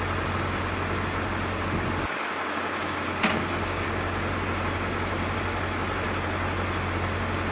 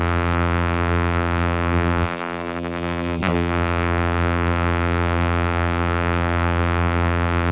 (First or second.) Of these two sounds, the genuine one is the first